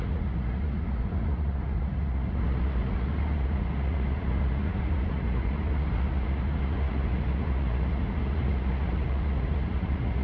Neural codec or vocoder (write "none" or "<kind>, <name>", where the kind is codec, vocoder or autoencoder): vocoder, Vocos